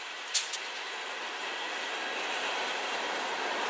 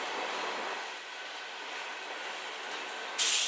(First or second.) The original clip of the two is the second